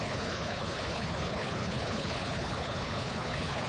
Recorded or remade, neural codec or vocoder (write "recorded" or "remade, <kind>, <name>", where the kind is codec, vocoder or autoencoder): remade, codec, HILCodec